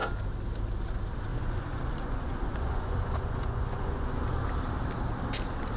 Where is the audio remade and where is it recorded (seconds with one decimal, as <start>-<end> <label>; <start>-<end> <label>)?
0.0-1.3 recorded; 1.3-4.2 remade; 4.2-5.8 recorded